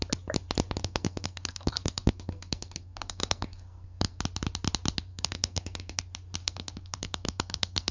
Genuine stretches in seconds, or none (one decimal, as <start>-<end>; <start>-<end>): 0.0-0.8; 4.2-5.1; 6.0-6.4